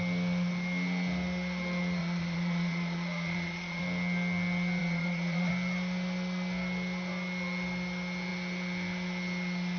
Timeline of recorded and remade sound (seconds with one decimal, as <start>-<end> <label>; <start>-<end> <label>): 0.0-2.0 recorded; 2.0-3.8 remade; 3.8-4.8 recorded; 4.8-5.5 remade; 5.5-9.8 recorded